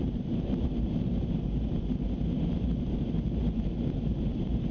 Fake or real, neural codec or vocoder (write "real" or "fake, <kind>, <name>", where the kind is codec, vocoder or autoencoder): fake, vocoder, BigVGAN v2